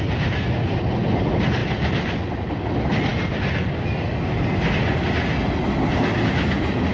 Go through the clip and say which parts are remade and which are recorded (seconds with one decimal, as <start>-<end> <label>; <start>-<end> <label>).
0.0-6.9 recorded